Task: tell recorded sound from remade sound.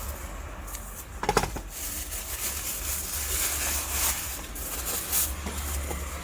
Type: recorded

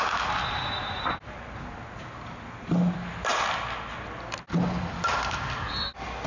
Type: recorded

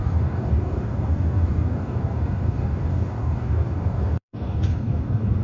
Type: remade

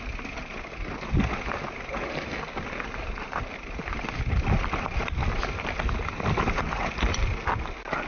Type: recorded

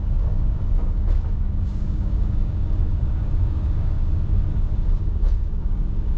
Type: remade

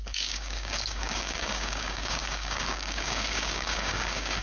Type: remade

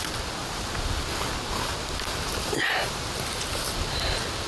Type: recorded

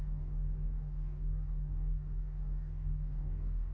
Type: remade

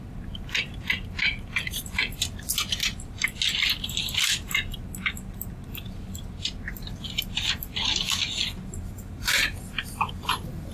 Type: recorded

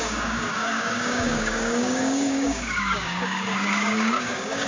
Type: remade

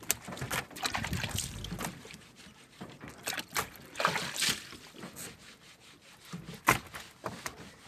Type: recorded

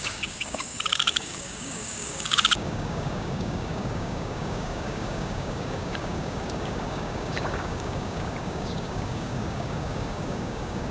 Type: remade